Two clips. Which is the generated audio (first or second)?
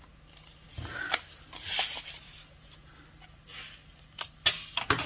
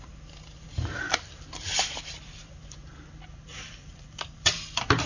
second